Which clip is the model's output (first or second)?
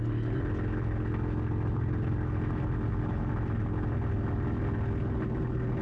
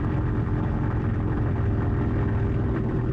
second